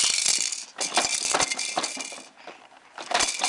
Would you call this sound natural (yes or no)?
yes